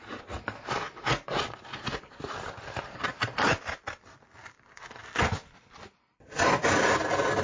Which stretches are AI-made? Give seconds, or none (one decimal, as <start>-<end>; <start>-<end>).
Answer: 2.2-7.4

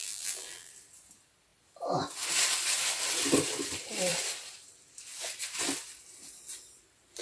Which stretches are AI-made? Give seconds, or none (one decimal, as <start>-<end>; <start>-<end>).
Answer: 0.0-0.7

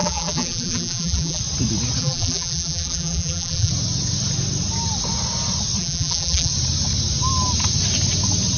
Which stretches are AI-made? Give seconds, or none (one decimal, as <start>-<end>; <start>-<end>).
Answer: 0.0-1.4; 2.0-3.7; 5.8-6.5

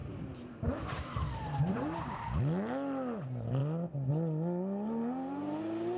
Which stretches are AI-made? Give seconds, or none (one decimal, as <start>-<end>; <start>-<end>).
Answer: 0.0-2.4

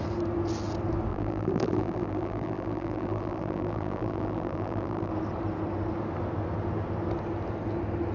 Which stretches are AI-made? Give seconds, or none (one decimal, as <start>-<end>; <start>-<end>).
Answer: 1.1-5.1